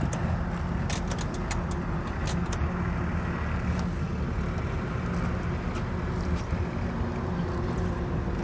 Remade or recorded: recorded